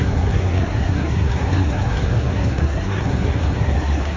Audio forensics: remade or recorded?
remade